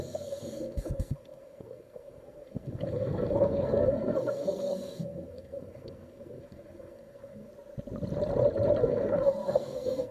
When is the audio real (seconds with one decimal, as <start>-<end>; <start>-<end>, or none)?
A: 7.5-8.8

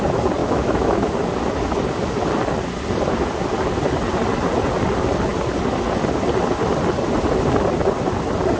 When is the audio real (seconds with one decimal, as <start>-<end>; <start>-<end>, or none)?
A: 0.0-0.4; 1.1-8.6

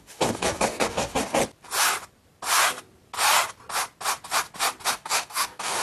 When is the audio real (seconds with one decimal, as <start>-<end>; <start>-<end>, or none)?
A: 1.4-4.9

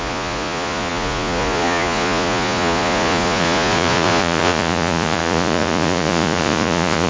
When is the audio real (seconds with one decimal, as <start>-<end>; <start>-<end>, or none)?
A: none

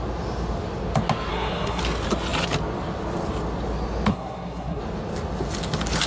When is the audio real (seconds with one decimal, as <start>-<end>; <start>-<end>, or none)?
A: 0.0-1.3; 1.8-4.1; 4.8-6.1